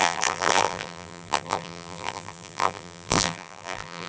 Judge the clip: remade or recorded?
remade